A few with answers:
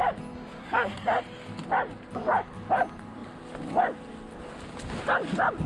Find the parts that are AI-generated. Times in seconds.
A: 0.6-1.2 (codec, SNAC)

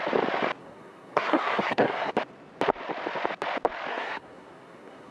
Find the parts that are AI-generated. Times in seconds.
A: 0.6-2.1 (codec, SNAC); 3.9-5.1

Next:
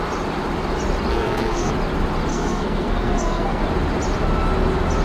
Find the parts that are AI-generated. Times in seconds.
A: 1.1-1.7 (codec, SNAC); 2.3-3.6

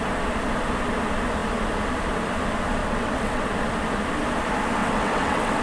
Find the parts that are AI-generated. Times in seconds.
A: 2.8-3.4 (vocoder, WaveNeXt); 4.8-5.6

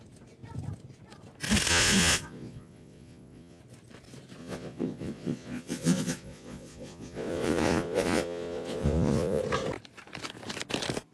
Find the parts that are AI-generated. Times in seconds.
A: 1.7-3.6 (vocoder, Vocos); 4.4-9.4

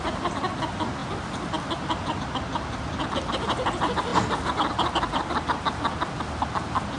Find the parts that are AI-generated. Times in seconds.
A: none